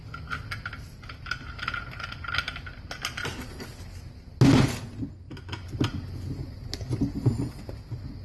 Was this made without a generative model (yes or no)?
yes